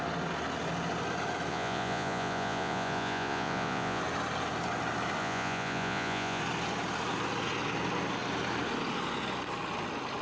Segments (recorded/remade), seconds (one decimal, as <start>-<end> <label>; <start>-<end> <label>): 0.0-1.5 recorded; 1.5-4.0 remade; 4.0-5.2 recorded; 5.2-6.4 remade; 6.4-10.2 recorded